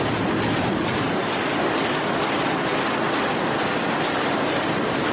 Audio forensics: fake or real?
real